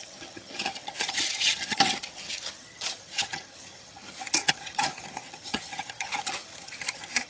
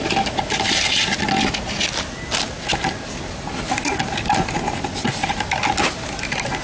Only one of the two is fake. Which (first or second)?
first